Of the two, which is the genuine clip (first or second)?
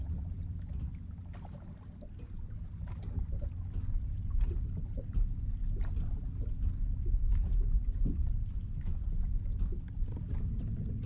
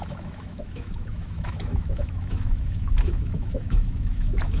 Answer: first